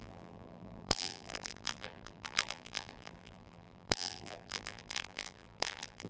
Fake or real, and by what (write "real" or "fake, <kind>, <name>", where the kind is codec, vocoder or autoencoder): fake, vocoder, BigVGAN v2